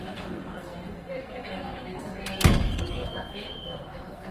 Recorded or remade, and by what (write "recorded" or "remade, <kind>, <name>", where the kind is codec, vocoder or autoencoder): remade, codec, SNAC